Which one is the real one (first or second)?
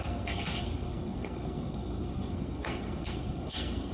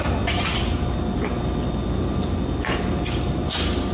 second